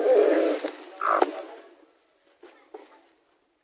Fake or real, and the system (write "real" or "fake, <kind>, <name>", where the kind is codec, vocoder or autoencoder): real